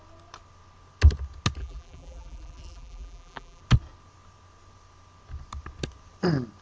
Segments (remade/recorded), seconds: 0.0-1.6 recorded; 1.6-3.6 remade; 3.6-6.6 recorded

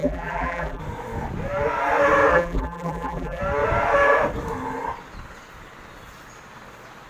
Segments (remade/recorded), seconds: 0.0-0.8 remade; 0.8-2.3 recorded; 2.3-3.4 remade; 3.4-7.1 recorded

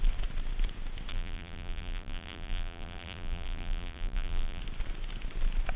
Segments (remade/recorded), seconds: 0.0-1.1 recorded; 1.1-4.6 remade; 4.6-5.8 recorded